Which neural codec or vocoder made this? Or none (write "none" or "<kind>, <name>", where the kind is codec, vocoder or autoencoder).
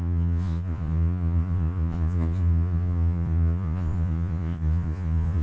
vocoder, Vocos